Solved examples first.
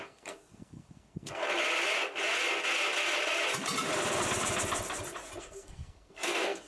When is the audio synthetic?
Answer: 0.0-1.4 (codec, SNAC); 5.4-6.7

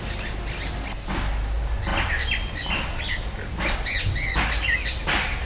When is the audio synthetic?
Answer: none

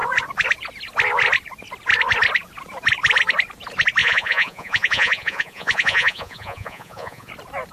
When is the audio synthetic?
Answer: 4.0-7.3 (vocoder, Vocos)

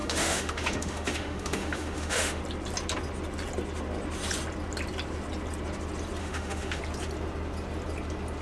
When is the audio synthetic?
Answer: 0.0-2.4 (autoencoder, DAC-VAE); 6.2-6.8

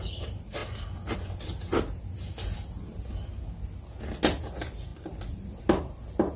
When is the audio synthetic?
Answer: none

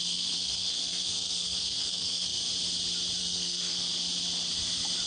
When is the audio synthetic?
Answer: 0.0-2.4 (codec, SNAC); 3.2-3.9

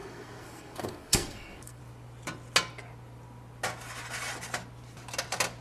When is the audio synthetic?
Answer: 0.0-1.8 (codec, SNAC)